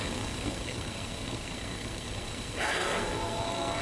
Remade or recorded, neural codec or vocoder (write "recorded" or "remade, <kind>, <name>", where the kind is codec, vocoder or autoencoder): remade, codec, SNAC